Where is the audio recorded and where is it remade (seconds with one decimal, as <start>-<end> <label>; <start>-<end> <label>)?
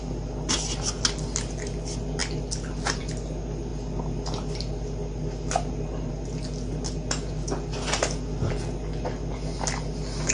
0.0-10.3 recorded